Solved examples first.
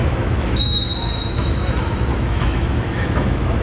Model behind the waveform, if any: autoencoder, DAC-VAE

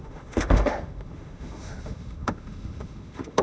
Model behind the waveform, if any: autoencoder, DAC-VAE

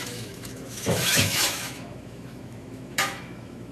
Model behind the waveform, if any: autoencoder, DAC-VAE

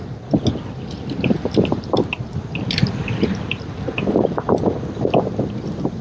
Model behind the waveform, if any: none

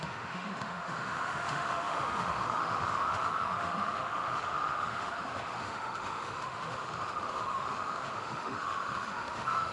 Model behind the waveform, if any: autoencoder, DAC-VAE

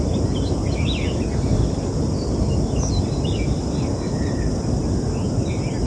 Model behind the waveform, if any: none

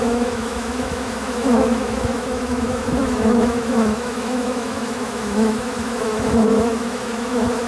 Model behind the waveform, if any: autoencoder, DAC-VAE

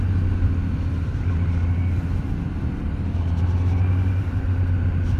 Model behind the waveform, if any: none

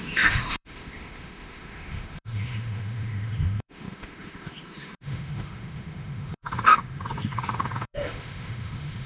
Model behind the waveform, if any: autoencoder, DAC-VAE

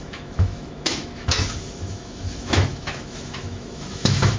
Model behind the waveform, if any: autoencoder, DAC-VAE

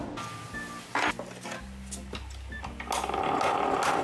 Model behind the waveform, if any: none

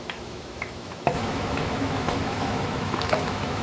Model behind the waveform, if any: autoencoder, DAC-VAE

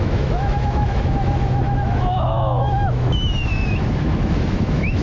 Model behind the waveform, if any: autoencoder, DAC-VAE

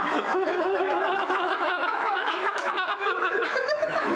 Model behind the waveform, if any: autoencoder, DAC-VAE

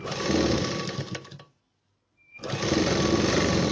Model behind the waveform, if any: none